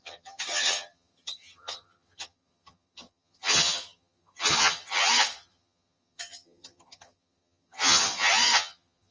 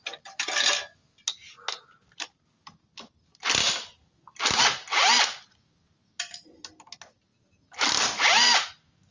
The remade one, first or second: first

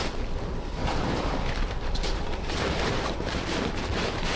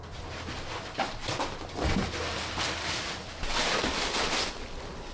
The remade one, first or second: first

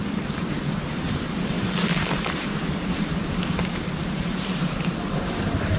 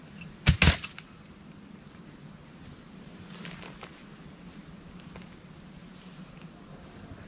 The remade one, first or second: first